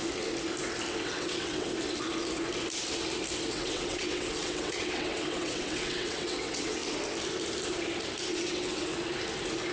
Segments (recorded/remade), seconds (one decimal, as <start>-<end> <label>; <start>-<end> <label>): 0.0-0.9 recorded; 0.9-1.7 remade; 1.7-3.5 recorded; 3.5-6.8 remade; 6.8-8.3 recorded; 8.3-8.9 remade; 8.9-9.7 recorded